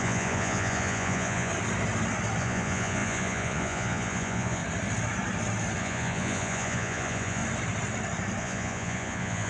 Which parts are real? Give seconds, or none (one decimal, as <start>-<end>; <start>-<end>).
1.5-2.4; 4.6-5.8; 7.4-8.4